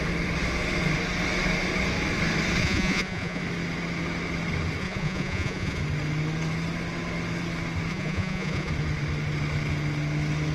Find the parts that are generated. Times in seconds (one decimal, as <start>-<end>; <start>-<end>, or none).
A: 2.6-3.4; 4.8-5.8; 7.9-8.7